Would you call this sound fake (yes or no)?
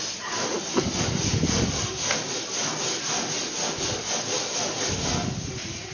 no